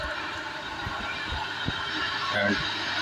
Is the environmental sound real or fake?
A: fake